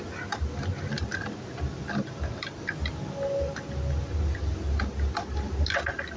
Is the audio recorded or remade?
recorded